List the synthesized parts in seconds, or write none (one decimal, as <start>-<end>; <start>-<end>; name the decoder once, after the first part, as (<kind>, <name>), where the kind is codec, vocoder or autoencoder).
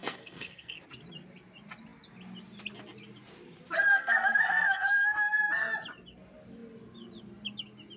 0.0-0.8 (codec, SNAC); 3.9-5.4